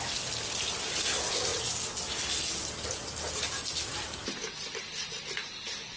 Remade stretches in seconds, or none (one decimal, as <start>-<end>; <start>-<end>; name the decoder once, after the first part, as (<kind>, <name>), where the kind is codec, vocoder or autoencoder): none